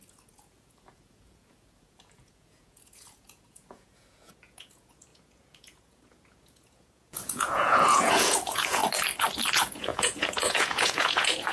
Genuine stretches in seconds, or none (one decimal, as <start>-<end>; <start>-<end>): 8.8-9.5